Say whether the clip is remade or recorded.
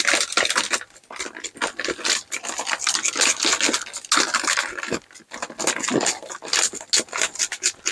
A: recorded